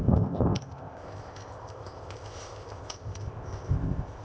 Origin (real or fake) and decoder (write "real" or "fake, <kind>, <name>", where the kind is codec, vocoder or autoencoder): fake, codec, ZipCodec